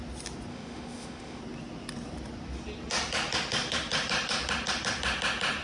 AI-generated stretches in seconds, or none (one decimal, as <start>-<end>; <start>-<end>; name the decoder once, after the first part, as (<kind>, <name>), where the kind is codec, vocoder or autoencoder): 0.5-1.4 (autoencoder, DAC-VAE)